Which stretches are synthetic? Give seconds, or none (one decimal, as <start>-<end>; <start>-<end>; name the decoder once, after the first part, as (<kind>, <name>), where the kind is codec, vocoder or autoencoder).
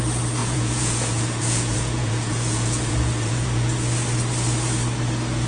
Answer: 0.4-3.7 (vocoder, Vocos)